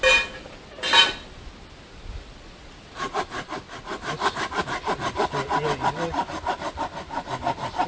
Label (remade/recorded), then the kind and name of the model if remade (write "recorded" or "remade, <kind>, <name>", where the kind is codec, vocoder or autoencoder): recorded